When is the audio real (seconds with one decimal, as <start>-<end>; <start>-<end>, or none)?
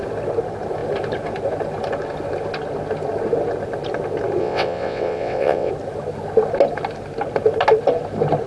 0.0-4.4; 5.7-8.5